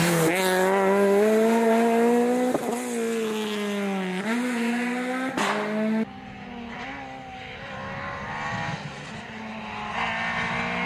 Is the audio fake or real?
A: real